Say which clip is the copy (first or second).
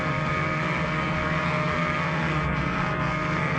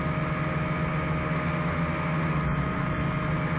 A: first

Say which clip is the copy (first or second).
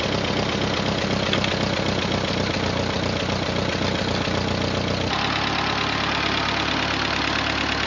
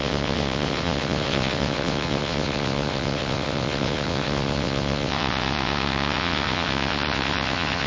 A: second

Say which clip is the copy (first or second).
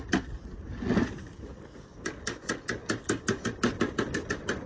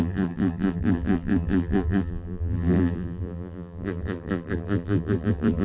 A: second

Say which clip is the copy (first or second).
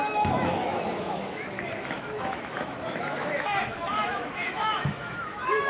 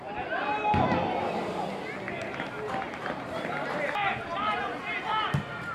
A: first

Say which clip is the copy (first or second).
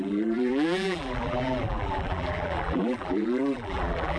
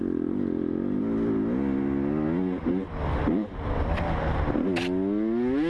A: first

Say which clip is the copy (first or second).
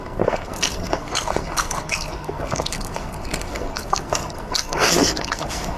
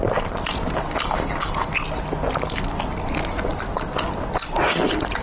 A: first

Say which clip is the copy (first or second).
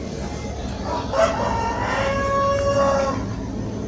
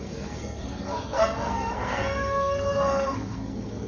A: second